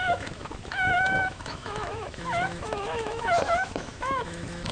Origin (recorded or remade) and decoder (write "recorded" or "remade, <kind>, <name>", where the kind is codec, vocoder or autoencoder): remade, autoencoder, DAC-VAE